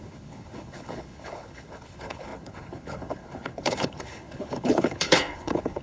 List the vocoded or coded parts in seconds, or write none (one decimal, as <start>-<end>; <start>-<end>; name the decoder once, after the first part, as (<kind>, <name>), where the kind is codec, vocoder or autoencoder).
0.0-5.8 (codec, HILCodec)